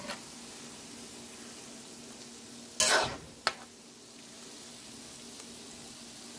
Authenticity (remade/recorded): recorded